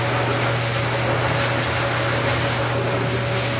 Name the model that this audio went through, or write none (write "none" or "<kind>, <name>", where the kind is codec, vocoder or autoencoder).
none